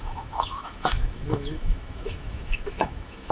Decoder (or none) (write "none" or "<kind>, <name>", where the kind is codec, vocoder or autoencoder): autoencoder, DAC-VAE